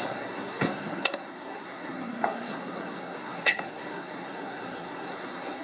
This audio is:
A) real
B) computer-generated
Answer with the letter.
B